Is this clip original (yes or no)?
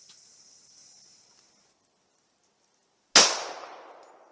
yes